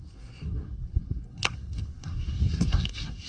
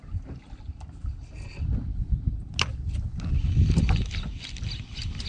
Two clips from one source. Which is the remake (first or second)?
first